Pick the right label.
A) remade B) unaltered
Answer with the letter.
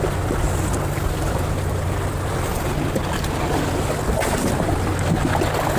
B